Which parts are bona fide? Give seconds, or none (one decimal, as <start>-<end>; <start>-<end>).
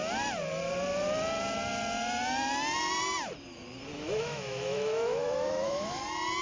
0.0-3.9; 6.0-6.4